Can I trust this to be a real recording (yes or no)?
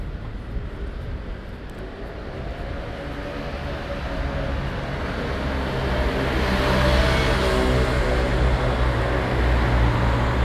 yes